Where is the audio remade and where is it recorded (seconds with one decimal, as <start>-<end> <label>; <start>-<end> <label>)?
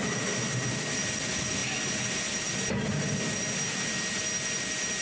0.0-5.0 recorded